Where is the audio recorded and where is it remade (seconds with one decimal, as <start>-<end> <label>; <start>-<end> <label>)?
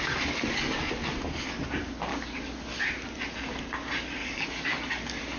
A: 0.0-2.1 recorded; 2.1-2.8 remade; 2.8-4.2 recorded; 4.2-5.4 remade